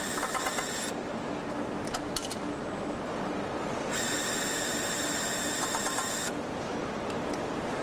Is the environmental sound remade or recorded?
recorded